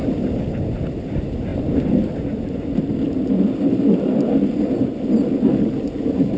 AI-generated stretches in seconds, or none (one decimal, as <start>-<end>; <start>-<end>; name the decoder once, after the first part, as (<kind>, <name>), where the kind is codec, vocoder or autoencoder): none